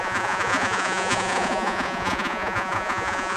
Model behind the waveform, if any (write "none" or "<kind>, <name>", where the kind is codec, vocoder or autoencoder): vocoder, Vocos